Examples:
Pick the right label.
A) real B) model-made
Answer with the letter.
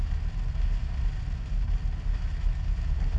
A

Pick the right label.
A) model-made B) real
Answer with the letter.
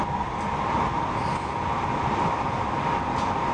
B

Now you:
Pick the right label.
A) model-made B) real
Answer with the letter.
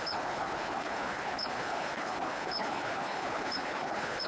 A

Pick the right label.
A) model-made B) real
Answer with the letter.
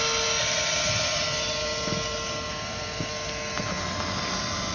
B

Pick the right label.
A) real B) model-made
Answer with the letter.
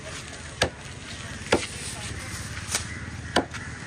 A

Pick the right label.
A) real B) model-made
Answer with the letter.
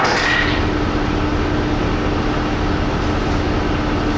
A